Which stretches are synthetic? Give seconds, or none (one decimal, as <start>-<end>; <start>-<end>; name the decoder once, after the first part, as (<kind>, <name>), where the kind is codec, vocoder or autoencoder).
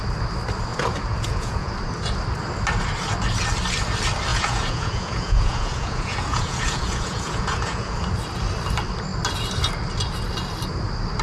0.7-1.7 (vocoder, Vocos); 4.3-8.0